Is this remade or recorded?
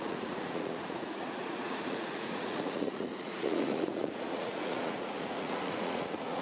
remade